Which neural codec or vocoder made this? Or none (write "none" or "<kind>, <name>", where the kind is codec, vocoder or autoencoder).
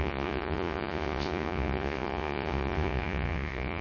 vocoder, Vocos